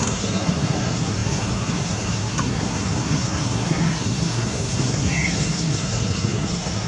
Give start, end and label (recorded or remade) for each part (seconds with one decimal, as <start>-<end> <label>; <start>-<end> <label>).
0.0-6.9 remade

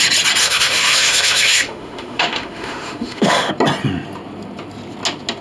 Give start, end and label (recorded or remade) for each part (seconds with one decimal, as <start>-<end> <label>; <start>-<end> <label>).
0.0-0.4 recorded; 0.4-3.5 remade; 3.5-5.4 recorded

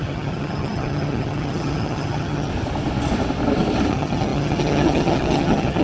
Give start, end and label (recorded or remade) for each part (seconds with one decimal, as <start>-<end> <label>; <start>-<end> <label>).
0.0-2.5 remade; 2.5-3.9 recorded; 3.9-5.8 remade